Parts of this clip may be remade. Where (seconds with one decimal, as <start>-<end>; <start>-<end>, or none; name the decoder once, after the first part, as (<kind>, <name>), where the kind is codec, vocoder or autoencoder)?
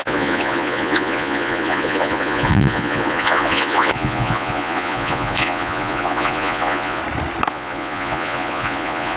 0.0-7.0 (vocoder, Vocos); 7.5-9.2